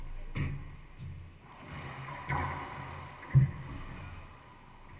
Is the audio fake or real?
real